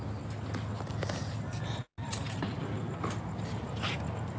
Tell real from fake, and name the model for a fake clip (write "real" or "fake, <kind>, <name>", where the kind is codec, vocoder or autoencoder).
real